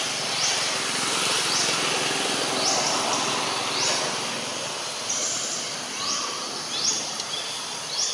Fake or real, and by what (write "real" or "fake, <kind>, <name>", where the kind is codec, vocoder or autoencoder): real